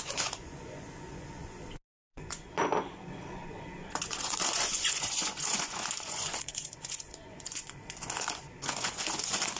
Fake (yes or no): yes